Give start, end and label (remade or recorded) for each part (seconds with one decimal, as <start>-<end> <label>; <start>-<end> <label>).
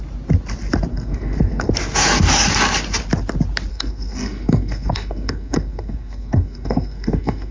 0.0-0.9 recorded; 0.9-1.7 remade; 1.7-3.7 recorded; 3.7-7.5 remade